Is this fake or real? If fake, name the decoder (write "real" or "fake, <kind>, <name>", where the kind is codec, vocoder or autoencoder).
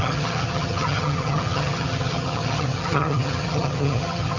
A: fake, vocoder, HiFi-GAN